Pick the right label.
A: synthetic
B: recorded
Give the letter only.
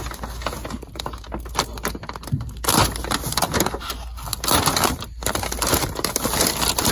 B